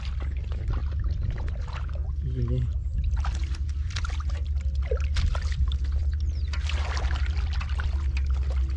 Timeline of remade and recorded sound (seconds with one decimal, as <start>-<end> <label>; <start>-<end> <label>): 0.0-0.8 recorded; 0.8-1.6 remade; 1.6-2.8 recorded; 2.8-4.0 remade; 4.0-8.8 recorded

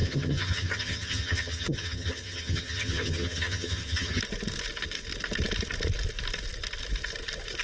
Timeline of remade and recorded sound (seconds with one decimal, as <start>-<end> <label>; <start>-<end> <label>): 0.0-4.2 remade; 4.2-7.6 recorded